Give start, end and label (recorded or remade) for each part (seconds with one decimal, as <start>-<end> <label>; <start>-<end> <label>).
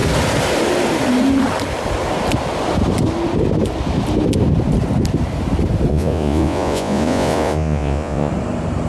0.0-5.9 recorded; 5.9-8.3 remade; 8.3-8.9 recorded